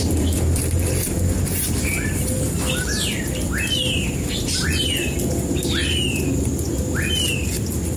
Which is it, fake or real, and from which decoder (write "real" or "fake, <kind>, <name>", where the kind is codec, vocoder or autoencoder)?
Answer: fake, vocoder, BigVGAN v2